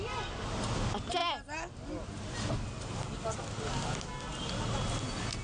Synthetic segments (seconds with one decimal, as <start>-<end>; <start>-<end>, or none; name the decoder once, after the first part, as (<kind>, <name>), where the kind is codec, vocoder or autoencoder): none